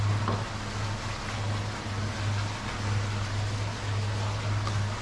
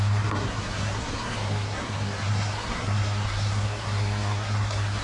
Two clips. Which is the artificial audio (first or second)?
second